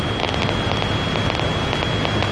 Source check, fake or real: real